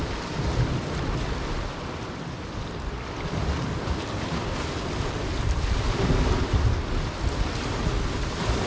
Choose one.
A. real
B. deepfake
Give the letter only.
A